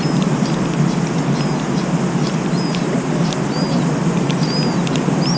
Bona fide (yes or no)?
yes